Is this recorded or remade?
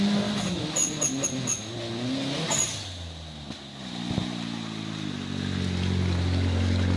recorded